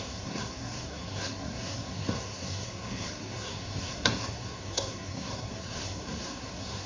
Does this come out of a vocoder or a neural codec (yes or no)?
yes